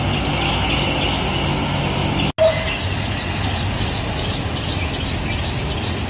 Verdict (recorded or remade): recorded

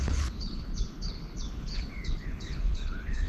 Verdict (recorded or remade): remade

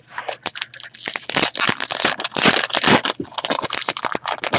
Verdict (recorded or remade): recorded